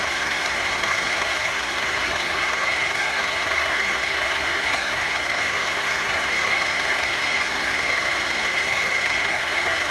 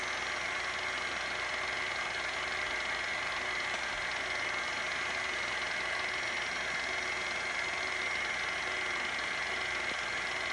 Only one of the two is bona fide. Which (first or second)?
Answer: second